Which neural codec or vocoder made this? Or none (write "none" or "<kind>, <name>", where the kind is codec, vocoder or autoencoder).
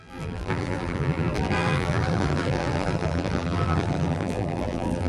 vocoder, BigVGAN v2